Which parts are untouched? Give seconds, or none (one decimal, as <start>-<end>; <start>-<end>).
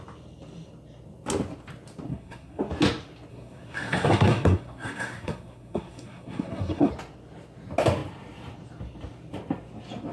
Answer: 0.0-2.1; 2.6-3.3; 6.9-10.1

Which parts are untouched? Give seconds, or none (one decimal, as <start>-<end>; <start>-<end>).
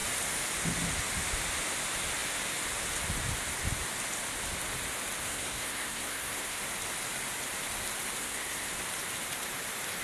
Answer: 0.0-5.2; 6.6-8.2; 8.7-10.0